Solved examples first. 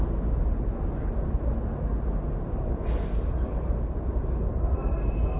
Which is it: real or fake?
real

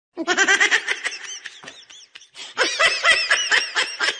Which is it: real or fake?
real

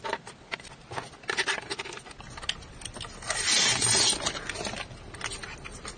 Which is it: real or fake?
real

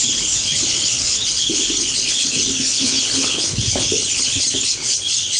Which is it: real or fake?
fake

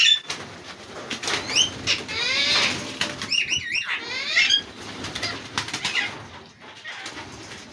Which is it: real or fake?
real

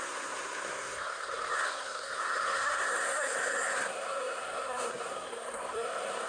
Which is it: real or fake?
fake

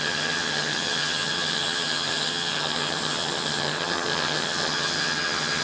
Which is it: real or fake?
fake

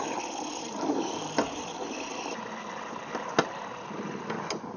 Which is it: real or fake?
real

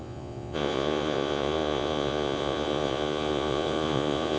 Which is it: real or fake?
fake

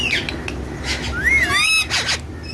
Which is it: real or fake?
real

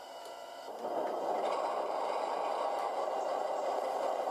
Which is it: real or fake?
fake